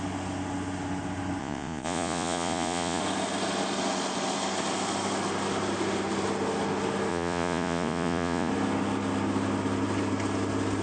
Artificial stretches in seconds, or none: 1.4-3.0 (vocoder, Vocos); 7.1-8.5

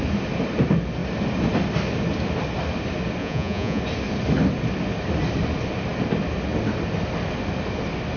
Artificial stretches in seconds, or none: 3.2-3.8 (vocoder, Vocos)

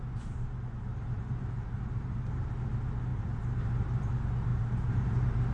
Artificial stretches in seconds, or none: 0.9-2.7 (vocoder, BigVGAN v2); 3.1-4.0; 4.5-5.1